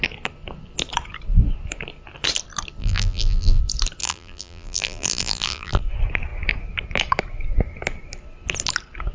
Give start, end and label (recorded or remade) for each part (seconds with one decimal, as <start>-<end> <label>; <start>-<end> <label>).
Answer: 0.0-2.8 recorded; 2.8-3.6 remade; 3.6-4.0 recorded; 4.0-5.8 remade; 5.8-9.1 recorded